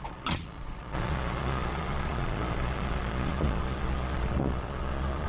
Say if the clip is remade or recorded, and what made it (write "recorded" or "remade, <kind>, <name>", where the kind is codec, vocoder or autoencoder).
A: remade, vocoder, Vocos